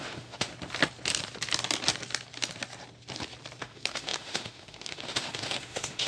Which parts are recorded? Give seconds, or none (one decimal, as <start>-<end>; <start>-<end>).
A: 0.5-3.6